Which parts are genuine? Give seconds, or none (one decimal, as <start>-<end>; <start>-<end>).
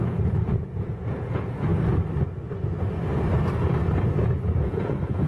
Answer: 1.7-4.0